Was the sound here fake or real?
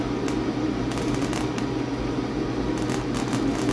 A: real